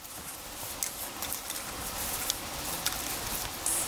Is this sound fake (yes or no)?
no